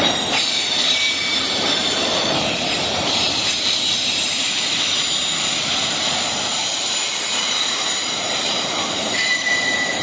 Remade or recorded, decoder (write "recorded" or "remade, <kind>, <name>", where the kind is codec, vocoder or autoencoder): remade, vocoder, BigVGAN v2